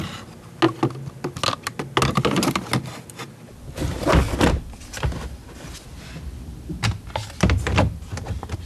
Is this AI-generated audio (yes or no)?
no